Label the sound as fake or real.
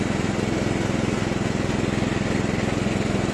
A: real